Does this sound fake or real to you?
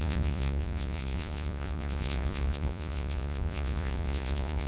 fake